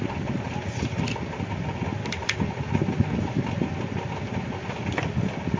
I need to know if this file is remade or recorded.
recorded